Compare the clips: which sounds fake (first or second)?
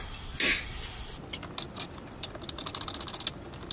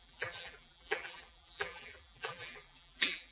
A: second